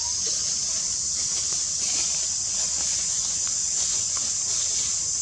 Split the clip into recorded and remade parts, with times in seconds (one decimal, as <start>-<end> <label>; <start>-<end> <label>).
0.0-2.9 recorded; 2.9-4.3 remade; 4.3-5.2 recorded